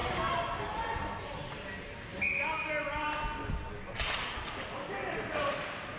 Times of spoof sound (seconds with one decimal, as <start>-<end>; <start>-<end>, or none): none